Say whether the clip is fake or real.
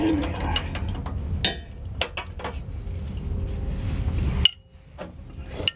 real